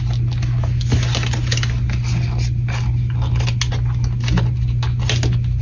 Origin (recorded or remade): recorded